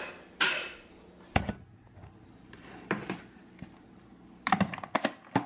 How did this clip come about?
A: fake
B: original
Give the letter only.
B